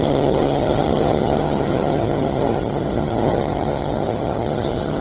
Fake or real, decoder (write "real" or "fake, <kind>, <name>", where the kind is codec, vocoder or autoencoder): fake, vocoder, HiFi-GAN